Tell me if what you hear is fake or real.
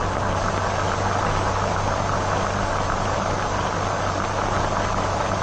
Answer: real